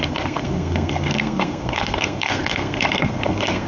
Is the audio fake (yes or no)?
yes